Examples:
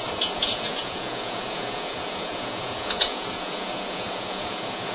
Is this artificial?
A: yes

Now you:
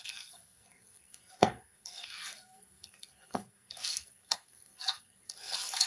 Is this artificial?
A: yes